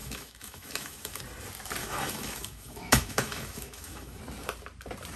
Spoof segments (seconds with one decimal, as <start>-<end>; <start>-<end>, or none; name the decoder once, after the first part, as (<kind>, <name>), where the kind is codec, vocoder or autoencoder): 0.0-1.2 (autoencoder, DAC-VAE); 1.8-4.2